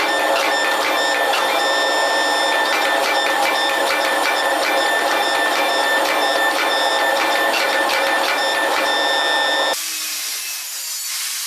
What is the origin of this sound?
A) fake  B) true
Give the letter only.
B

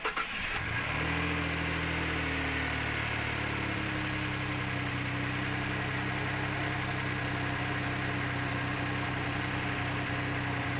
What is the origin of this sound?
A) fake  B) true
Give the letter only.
B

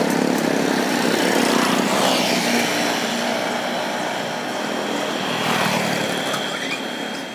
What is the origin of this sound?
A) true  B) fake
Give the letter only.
A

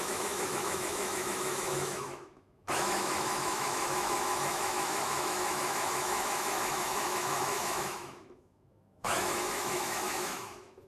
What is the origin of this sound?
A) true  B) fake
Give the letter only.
B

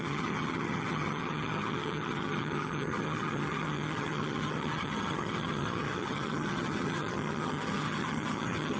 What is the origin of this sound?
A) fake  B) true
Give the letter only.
A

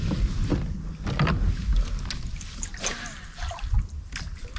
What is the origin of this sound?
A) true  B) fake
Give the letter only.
A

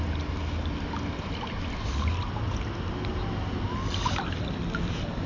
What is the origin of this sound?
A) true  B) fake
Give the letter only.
A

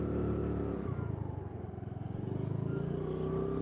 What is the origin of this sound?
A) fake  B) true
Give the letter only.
B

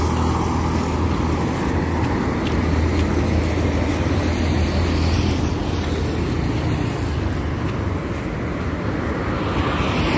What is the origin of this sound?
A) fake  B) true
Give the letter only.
B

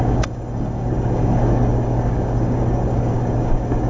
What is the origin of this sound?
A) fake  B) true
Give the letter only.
A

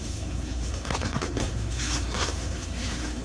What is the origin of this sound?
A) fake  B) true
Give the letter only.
A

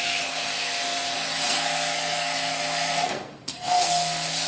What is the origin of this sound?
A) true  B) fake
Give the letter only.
B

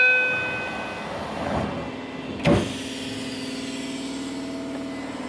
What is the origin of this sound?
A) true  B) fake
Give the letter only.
A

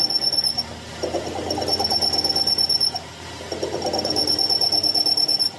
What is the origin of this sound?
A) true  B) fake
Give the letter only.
A